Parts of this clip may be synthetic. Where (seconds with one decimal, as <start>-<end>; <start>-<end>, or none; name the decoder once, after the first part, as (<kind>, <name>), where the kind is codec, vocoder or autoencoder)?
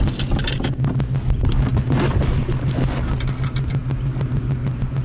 none